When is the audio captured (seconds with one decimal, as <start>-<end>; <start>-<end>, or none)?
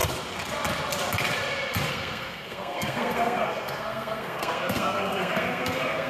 0.0-1.9